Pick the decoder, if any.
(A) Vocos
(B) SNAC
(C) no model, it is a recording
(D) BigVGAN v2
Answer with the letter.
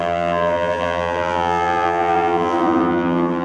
D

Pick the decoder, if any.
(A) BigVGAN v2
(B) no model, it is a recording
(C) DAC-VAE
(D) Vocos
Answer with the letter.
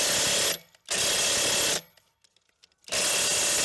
B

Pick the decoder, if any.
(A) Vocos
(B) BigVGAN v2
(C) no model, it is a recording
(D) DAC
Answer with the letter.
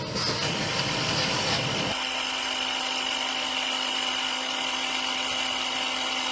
C